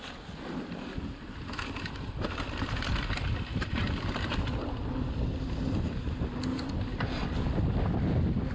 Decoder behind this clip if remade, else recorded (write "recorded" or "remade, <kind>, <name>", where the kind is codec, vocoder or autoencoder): recorded